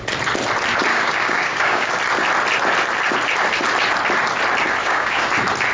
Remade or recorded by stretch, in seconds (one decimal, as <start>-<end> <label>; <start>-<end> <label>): 0.0-0.9 recorded; 0.9-1.9 remade; 1.9-4.8 recorded; 4.8-5.3 remade; 5.3-5.7 recorded